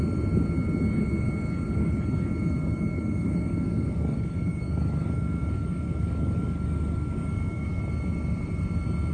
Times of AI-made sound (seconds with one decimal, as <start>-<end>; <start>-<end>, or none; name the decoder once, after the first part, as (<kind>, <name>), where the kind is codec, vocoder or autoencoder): 2.6-7.8 (codec, DAC)